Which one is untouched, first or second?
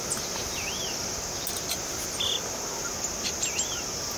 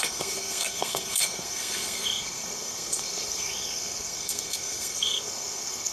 first